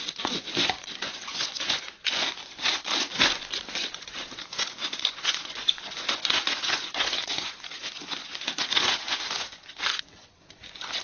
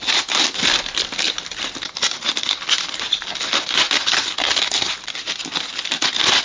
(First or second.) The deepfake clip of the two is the first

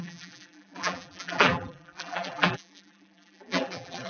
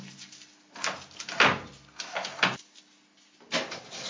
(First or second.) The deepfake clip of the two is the first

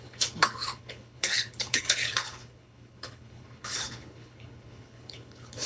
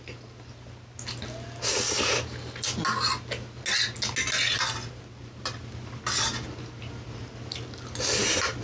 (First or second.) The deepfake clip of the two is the first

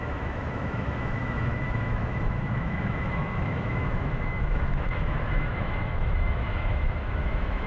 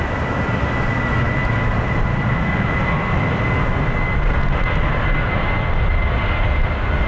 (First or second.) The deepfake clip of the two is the first